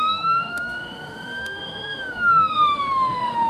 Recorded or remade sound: remade